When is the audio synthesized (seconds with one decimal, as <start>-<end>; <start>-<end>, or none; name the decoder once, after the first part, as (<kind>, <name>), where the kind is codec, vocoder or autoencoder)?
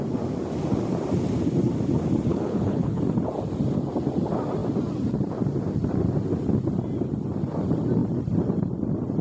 2.3-3.0 (codec, HILCodec)